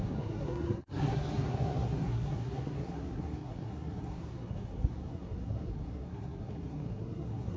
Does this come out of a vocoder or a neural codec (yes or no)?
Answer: yes